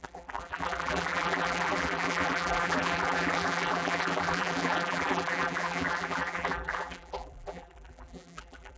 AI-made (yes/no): yes